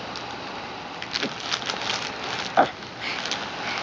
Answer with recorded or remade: recorded